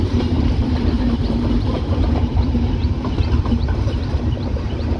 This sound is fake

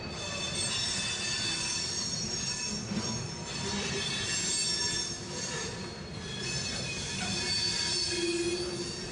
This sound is real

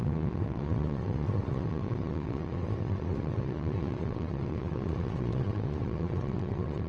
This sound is fake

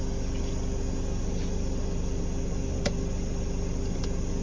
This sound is real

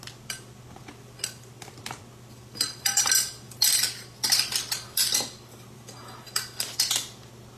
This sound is real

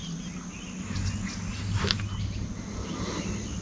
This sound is real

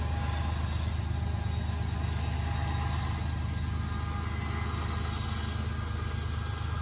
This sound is real